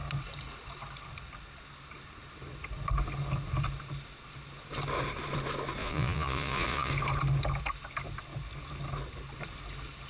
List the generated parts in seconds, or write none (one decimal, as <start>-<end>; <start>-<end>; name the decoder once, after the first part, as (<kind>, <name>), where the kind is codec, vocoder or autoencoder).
5.8-6.9 (vocoder, Vocos)